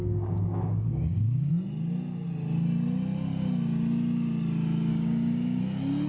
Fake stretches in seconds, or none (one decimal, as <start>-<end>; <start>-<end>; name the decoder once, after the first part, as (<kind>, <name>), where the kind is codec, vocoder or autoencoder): 0.0-1.5 (codec, DAC); 4.9-5.6

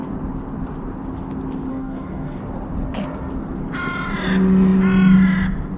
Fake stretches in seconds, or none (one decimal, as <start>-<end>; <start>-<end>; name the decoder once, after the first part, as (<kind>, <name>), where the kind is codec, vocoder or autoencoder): 1.7-2.4 (codec, DAC)